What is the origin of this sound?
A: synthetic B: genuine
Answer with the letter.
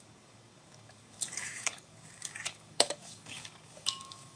A